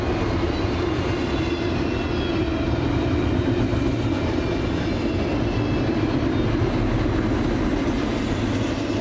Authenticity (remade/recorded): recorded